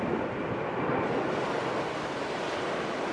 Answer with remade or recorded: recorded